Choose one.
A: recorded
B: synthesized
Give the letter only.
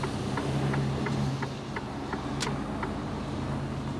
A